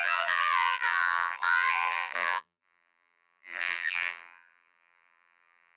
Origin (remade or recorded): remade